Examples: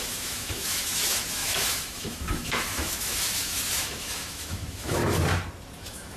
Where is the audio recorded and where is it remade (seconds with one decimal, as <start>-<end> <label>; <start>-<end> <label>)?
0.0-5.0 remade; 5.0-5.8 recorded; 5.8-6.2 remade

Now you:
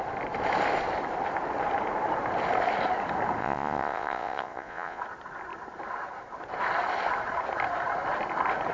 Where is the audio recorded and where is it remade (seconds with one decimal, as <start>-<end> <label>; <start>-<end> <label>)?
0.0-3.4 recorded; 3.4-5.0 remade; 5.0-8.7 recorded

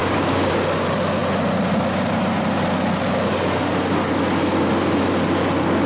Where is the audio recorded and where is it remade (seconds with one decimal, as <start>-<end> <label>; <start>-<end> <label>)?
0.0-0.5 remade; 0.5-5.9 recorded

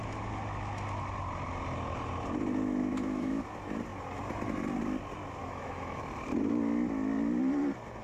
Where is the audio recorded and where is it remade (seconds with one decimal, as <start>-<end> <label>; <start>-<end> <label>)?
0.0-2.8 recorded; 2.8-3.4 remade; 3.4-5.4 recorded; 5.4-6.0 remade; 6.0-8.0 recorded

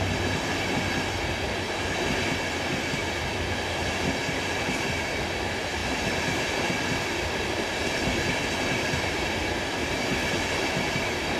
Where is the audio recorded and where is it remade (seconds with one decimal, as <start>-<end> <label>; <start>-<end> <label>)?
0.0-3.0 recorded; 3.0-4.5 remade; 4.5-5.8 recorded; 5.8-10.9 remade; 10.9-11.4 recorded